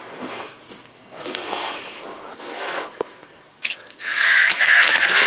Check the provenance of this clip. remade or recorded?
remade